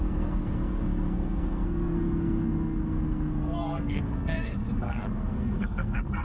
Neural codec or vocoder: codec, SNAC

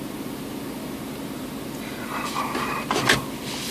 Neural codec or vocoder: none